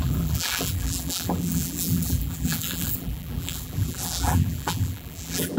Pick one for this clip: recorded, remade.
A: remade